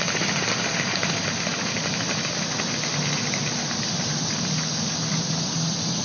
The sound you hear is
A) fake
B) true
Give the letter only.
B